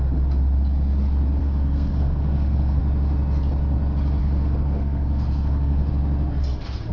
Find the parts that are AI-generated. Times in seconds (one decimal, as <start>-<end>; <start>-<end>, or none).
1.4-2.8; 4.2-5.9